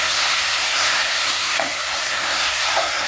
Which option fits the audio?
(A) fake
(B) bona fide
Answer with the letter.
A